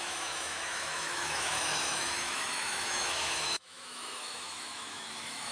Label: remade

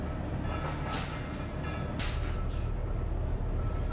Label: recorded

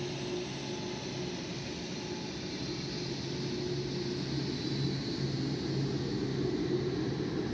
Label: recorded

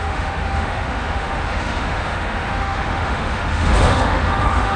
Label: remade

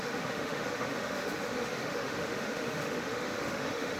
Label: remade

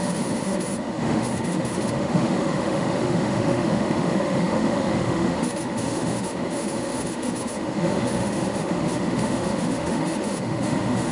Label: remade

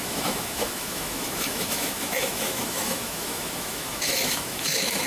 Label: remade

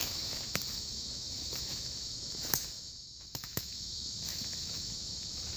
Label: remade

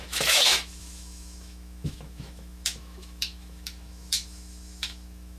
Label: remade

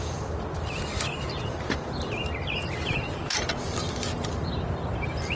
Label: recorded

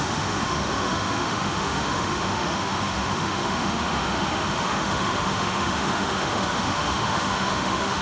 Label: remade